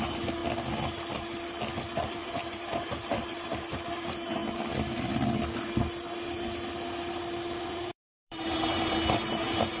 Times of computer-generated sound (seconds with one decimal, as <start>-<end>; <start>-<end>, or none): 0.0-0.4; 2.1-4.4; 7.6-9.8